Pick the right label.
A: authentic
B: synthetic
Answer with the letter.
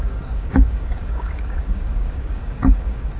B